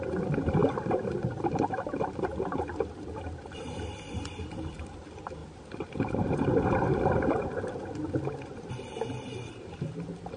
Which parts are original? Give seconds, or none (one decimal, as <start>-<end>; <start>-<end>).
none